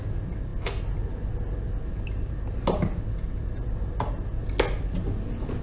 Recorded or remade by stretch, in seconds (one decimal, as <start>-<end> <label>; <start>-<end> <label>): 0.0-5.6 recorded